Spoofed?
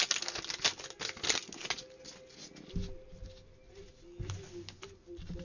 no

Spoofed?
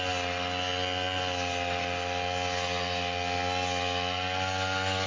no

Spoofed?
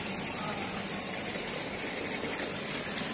yes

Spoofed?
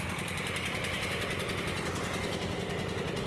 no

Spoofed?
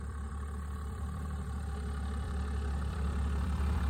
yes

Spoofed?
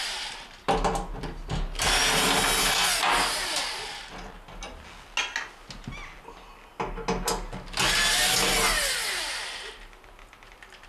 no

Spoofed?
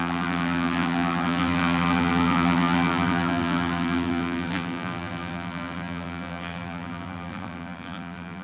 yes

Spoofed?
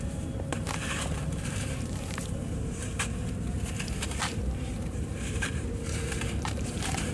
yes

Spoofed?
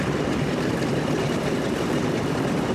no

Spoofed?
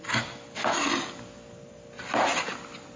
no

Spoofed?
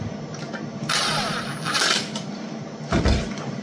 no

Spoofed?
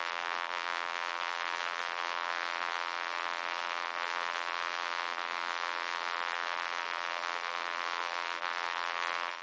yes